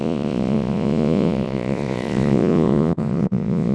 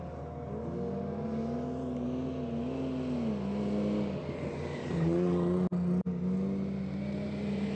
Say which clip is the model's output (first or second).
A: first